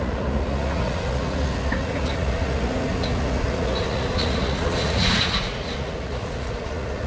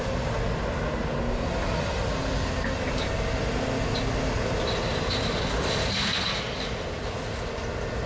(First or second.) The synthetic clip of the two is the first